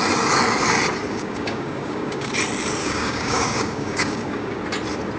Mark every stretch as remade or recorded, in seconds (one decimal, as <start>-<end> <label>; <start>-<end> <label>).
0.0-1.1 recorded; 1.1-2.3 remade; 2.3-2.8 recorded; 2.8-4.6 remade; 4.6-5.2 recorded